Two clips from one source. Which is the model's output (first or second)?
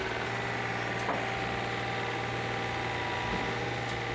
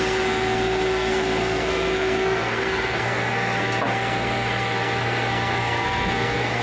second